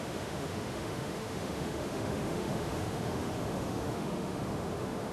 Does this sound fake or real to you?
fake